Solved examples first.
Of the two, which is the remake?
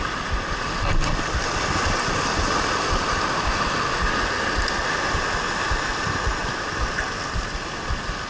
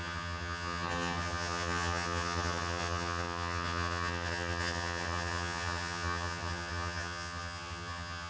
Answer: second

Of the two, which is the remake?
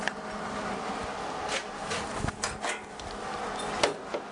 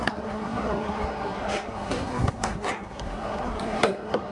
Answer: second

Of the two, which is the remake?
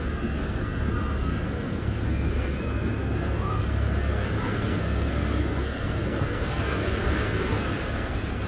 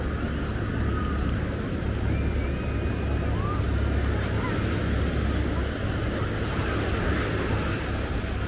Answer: first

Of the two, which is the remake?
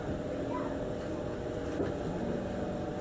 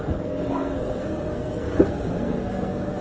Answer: second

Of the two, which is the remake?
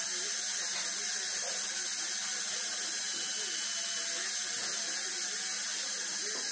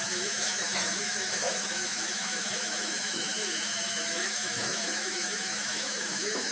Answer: second